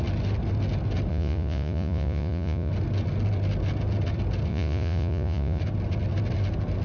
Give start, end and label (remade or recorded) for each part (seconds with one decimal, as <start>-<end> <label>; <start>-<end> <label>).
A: 0.0-1.1 recorded; 1.1-2.7 remade; 2.7-4.5 recorded; 4.5-5.6 remade; 5.6-6.8 recorded